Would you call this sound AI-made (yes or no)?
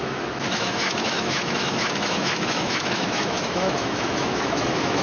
yes